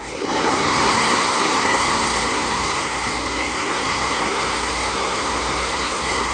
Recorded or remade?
remade